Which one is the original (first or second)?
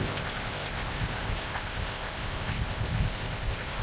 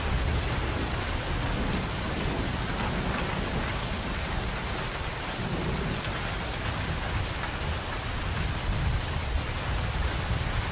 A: second